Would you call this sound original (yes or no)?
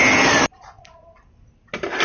yes